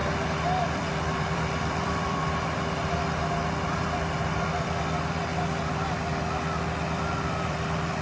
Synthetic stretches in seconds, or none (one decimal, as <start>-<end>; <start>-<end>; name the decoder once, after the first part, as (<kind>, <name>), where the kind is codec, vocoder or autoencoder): 0.6-2.2 (vocoder, BigVGAN v2); 3.8-5.3; 7.1-8.0